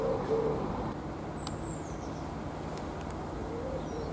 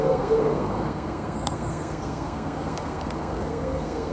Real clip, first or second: first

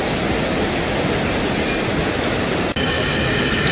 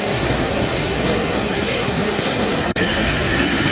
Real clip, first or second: first